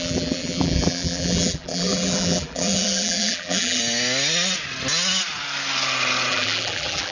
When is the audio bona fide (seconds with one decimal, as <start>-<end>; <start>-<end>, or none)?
3.8-6.3